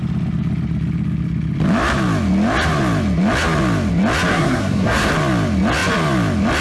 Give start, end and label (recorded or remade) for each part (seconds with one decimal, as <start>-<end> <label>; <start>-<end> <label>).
0.0-4.3 recorded; 4.3-5.1 remade; 5.1-6.6 recorded